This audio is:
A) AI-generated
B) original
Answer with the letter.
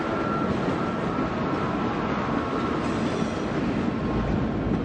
B